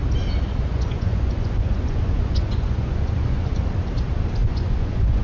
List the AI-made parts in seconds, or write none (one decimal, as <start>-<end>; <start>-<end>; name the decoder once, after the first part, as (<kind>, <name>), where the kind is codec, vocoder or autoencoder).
0.6-3.7 (vocoder, Vocos); 4.4-5.2